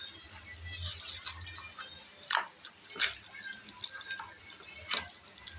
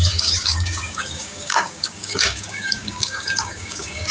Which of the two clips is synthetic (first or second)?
second